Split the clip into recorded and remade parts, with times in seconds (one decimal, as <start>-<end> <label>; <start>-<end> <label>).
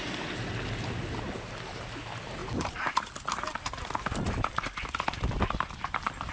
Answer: 0.0-6.3 recorded